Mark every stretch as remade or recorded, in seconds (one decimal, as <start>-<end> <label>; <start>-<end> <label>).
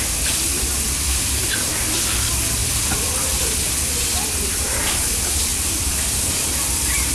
0.0-2.6 recorded; 2.6-3.4 remade; 3.4-5.5 recorded; 5.5-6.5 remade; 6.5-7.1 recorded